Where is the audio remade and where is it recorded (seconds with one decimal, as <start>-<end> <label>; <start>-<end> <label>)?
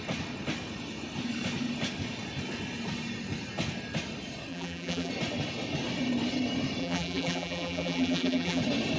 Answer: 0.0-4.5 recorded; 4.5-5.1 remade; 5.1-6.8 recorded; 6.8-8.6 remade; 8.6-9.0 recorded